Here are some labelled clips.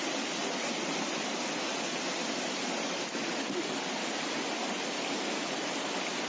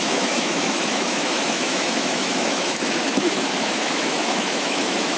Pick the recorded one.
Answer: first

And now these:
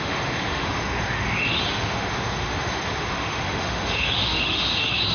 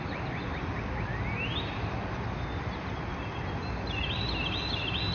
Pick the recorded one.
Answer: second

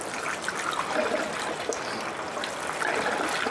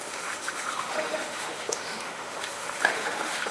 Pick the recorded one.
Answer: first